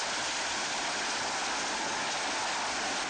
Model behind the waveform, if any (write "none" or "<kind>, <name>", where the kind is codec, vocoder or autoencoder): none